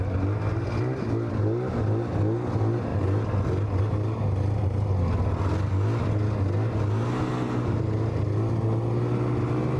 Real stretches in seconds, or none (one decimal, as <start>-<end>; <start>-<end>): 0.0-9.8